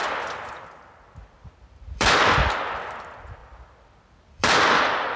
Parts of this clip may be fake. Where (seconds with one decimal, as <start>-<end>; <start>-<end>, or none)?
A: 0.0-0.5; 1.2-2.2; 3.4-5.2